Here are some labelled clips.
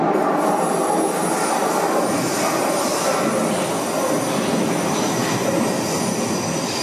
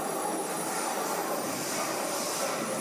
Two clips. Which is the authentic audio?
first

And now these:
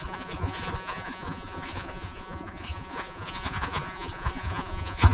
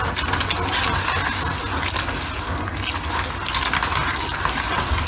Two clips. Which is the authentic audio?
second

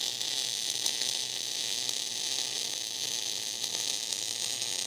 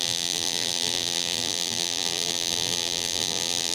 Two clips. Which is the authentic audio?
first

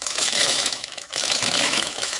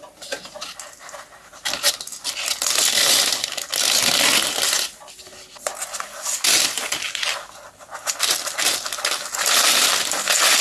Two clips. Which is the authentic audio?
second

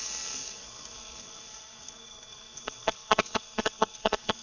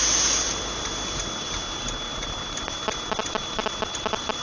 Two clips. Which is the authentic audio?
second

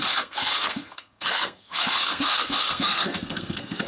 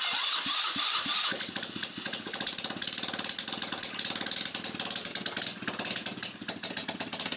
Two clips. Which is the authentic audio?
second